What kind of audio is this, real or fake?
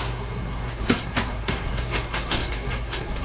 fake